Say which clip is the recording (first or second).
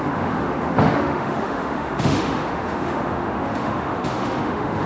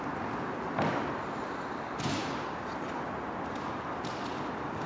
second